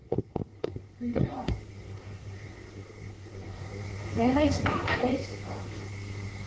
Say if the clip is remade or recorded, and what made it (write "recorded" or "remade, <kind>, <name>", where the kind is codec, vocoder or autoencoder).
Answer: remade, codec, SNAC